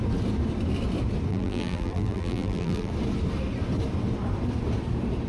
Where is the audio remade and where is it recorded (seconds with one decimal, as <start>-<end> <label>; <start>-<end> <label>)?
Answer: 0.0-1.3 recorded; 1.3-2.9 remade; 2.9-5.3 recorded